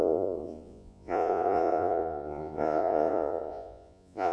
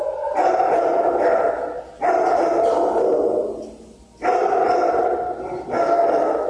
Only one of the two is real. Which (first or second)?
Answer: second